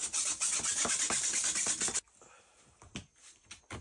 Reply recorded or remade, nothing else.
recorded